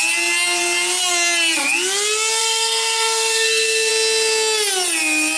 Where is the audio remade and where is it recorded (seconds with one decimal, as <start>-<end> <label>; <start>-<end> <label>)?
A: 0.0-2.4 recorded; 2.4-3.9 remade; 3.9-5.4 recorded